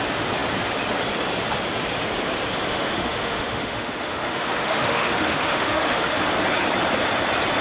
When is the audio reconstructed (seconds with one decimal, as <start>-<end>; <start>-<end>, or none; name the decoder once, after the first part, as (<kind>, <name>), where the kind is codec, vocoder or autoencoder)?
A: 2.7-6.2 (autoencoder, DAC-VAE)